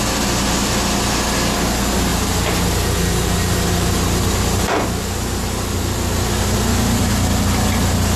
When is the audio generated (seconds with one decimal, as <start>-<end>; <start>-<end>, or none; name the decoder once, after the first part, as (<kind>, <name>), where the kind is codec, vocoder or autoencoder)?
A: none